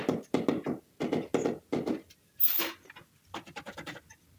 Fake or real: real